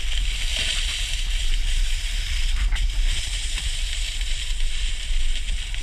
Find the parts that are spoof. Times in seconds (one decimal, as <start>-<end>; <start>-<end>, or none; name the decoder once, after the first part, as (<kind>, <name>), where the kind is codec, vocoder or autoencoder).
0.5-4.0 (vocoder, BigVGAN v2)